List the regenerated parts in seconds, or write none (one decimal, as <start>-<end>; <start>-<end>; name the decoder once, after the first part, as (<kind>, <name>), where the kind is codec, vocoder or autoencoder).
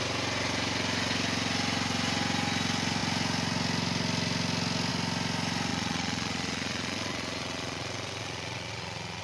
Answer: 5.7-9.2 (vocoder, Vocos)